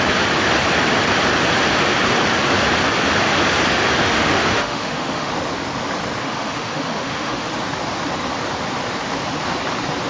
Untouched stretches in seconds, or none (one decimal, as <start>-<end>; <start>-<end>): 0.0-4.0; 5.3-6.2; 7.5-10.1